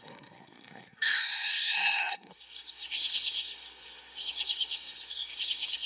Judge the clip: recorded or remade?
remade